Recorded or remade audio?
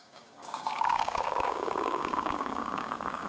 remade